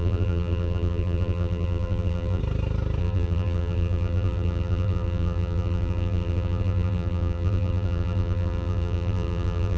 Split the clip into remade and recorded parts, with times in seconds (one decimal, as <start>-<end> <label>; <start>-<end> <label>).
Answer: 0.0-2.4 remade; 2.4-3.0 recorded; 3.0-9.8 remade